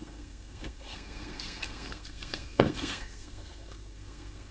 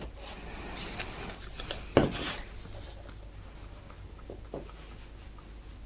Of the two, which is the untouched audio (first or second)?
second